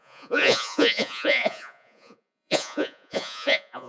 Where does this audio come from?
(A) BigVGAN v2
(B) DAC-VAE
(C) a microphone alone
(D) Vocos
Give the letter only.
D